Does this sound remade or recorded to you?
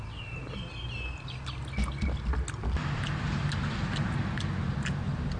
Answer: recorded